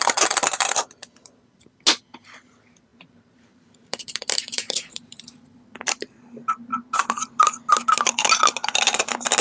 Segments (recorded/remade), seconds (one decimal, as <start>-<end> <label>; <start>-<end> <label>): 0.0-2.9 recorded; 2.9-5.6 remade; 5.6-9.4 recorded